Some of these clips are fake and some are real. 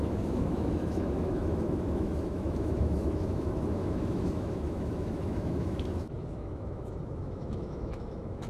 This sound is fake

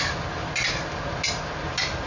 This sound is real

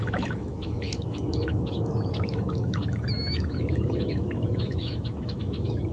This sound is fake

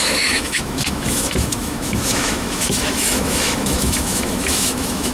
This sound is fake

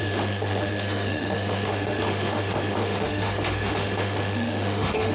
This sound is fake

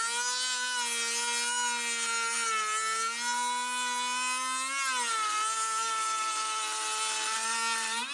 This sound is real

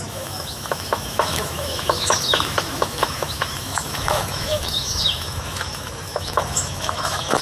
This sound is fake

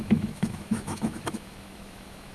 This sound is fake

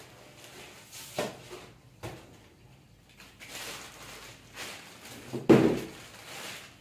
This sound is real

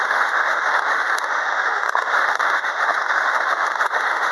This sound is fake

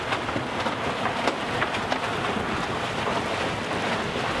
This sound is real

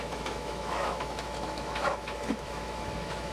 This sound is fake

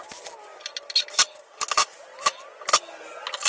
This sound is real